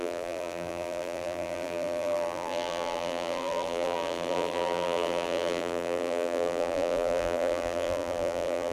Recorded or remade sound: remade